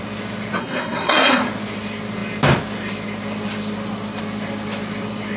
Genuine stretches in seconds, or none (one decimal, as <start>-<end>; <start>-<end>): 0.0-0.6; 1.4-5.4